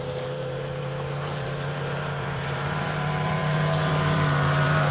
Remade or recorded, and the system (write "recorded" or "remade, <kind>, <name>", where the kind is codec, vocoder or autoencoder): remade, vocoder, BigVGAN v2